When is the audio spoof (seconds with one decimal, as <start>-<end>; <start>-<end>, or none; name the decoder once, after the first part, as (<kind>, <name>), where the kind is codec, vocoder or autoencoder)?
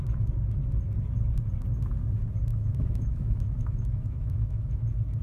2.5-4.8 (autoencoder, DAC-VAE)